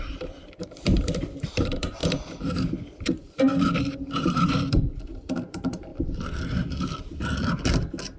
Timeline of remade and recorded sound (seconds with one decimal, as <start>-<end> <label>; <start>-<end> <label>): 0.0-5.9 remade; 5.9-8.2 recorded